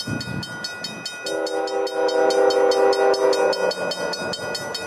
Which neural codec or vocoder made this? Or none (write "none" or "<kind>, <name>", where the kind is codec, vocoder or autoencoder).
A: none